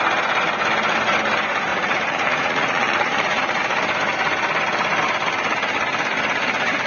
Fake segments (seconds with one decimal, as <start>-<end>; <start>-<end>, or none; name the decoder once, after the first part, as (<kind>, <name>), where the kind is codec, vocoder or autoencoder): 1.7-3.6 (vocoder, Vocos)